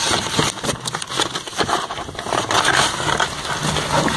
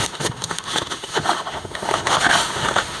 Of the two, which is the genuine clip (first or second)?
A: first